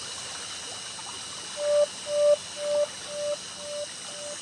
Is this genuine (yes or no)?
yes